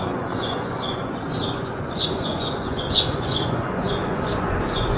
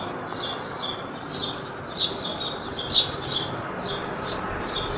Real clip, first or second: second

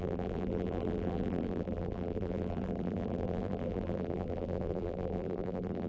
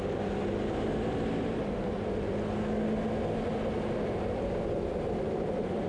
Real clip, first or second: second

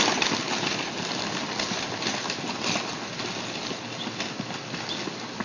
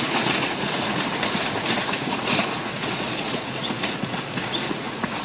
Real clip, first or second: first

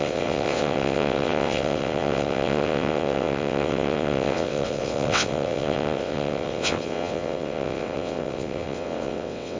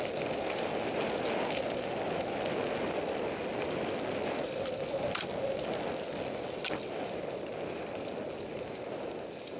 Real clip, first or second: second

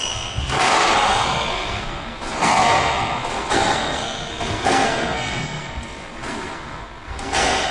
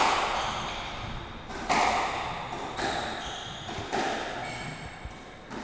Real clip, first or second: second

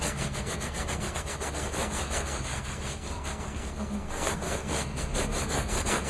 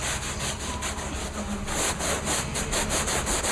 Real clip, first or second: second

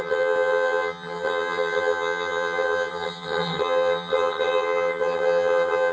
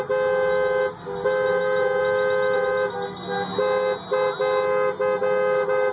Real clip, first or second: second